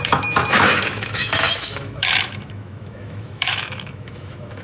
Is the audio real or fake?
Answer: fake